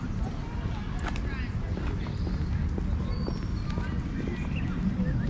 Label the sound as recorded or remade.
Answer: recorded